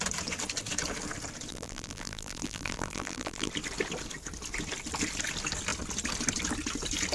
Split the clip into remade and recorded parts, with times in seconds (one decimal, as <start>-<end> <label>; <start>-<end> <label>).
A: 0.0-1.5 recorded; 1.5-3.5 remade; 3.5-7.1 recorded